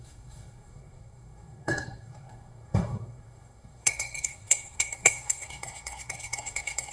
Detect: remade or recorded remade